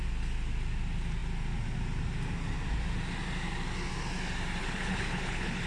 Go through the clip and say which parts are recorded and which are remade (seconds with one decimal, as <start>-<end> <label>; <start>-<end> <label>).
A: 0.0-4.6 recorded; 4.6-5.7 remade